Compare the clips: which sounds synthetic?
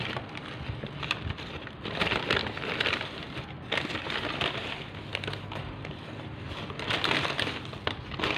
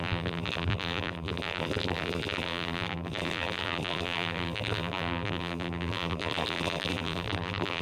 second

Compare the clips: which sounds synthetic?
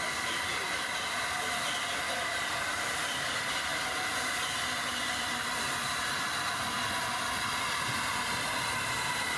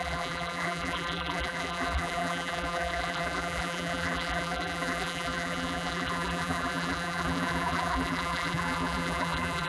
second